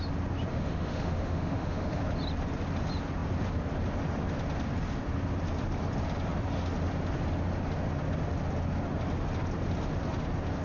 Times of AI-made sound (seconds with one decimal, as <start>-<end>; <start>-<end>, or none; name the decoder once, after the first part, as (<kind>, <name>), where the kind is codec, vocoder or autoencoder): 0.5-2.0 (autoencoder, DAC-VAE)